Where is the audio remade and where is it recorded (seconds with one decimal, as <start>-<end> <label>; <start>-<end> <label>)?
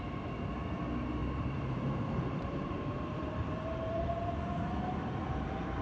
0.0-1.2 recorded; 1.2-4.7 remade; 4.7-5.8 recorded